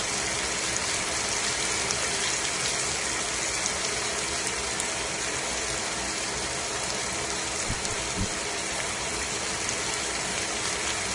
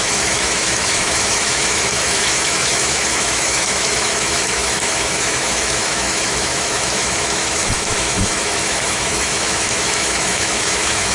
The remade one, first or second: second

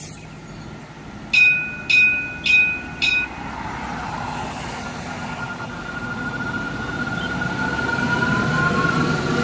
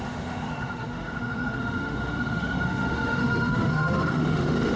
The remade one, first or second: second